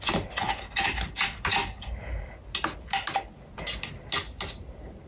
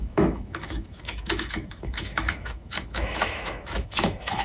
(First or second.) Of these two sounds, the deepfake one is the second